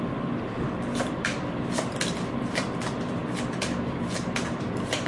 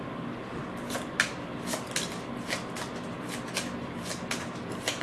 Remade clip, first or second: first